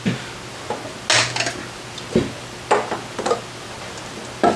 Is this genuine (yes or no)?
yes